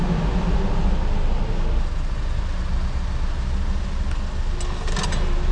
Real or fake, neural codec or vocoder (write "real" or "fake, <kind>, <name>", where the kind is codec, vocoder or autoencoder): real